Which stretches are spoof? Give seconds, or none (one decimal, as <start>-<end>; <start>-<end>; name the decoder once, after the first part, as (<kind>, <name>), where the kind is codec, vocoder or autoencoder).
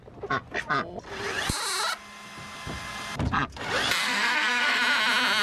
4.0-4.8 (codec, SNAC)